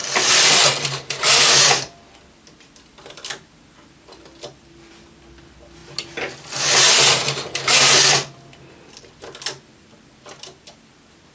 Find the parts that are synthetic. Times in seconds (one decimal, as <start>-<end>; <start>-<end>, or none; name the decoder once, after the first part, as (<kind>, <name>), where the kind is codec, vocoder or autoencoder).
none